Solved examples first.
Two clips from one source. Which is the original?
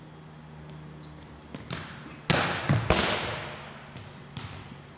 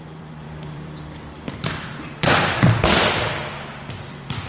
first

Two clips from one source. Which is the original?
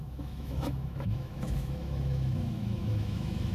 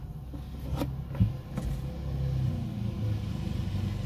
second